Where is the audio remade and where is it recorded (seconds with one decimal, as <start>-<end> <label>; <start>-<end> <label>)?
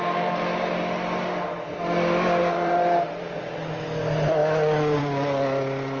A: 0.0-2.4 recorded; 2.4-3.4 remade; 3.4-6.0 recorded